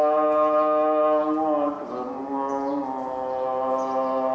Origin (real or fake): real